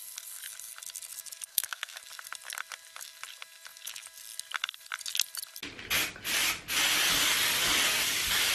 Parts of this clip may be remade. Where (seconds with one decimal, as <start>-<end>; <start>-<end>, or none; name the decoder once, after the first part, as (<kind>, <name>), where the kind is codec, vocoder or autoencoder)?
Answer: 1.5-2.0 (codec, SNAC)